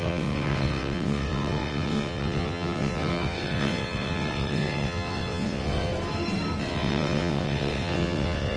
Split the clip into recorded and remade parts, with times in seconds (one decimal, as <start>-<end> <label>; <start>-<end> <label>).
0.0-5.9 remade; 5.9-6.6 recorded; 6.6-8.6 remade